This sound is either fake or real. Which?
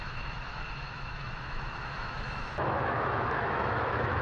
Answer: fake